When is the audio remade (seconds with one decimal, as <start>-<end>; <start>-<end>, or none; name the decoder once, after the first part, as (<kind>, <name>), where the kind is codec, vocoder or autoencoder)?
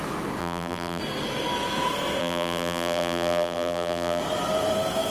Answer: 0.4-1.0 (vocoder, BigVGAN v2); 2.2-4.2